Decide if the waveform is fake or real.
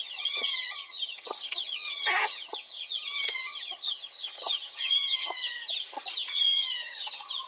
fake